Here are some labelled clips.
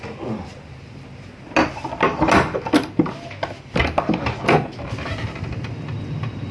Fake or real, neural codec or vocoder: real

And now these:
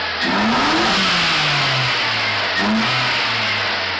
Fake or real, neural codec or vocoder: real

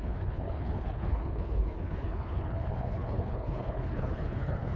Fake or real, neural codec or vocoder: fake, codec, HILCodec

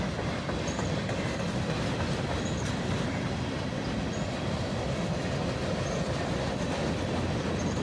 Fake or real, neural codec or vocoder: real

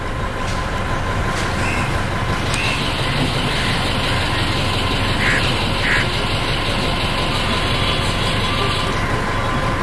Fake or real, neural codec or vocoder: real